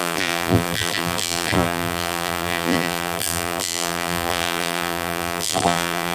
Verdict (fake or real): fake